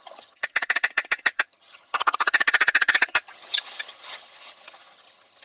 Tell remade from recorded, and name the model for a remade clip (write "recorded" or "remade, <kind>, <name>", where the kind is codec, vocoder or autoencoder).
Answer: remade, vocoder, HiFi-GAN